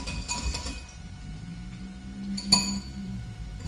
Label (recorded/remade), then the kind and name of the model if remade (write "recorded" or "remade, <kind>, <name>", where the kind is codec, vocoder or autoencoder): recorded